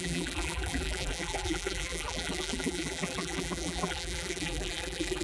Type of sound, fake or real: fake